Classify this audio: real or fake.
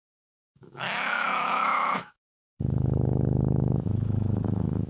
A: fake